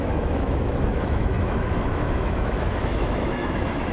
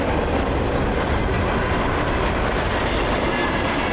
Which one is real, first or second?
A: second